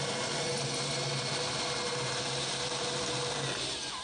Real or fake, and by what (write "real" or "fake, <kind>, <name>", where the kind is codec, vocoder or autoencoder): real